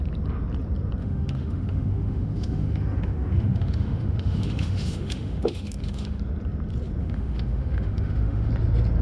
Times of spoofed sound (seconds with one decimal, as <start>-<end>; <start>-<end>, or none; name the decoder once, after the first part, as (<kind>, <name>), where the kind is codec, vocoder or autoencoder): 1.0-6.2 (autoencoder, DAC-VAE); 7.0-8.5